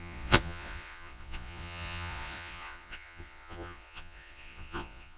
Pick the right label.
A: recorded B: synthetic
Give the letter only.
B